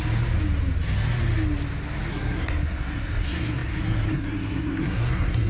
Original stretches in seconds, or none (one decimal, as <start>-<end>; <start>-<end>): 0.0-2.1